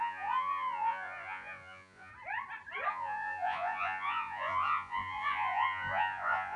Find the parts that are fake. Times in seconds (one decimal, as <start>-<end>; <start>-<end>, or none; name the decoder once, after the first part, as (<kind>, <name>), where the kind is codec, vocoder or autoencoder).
0.0-2.1 (vocoder, Vocos); 2.9-6.6